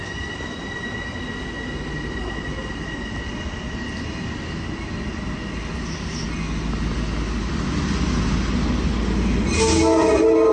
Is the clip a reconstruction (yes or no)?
no